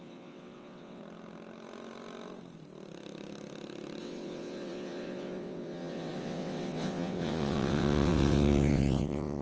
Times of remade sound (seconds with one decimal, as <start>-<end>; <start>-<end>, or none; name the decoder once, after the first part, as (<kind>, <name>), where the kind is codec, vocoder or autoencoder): 0.0-1.0 (vocoder, WaveNeXt); 4.0-9.4